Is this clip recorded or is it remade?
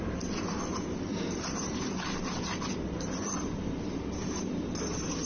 recorded